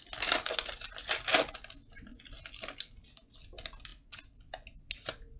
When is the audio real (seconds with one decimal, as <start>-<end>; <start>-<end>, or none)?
0.0-5.4